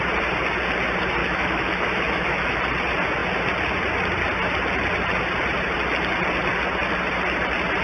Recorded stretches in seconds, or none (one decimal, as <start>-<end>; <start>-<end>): 0.0-1.2; 2.6-7.8